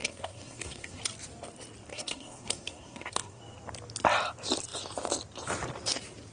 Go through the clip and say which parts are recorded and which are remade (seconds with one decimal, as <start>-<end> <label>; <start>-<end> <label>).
0.0-1.0 remade; 1.0-1.9 recorded; 1.9-3.4 remade; 3.4-6.3 recorded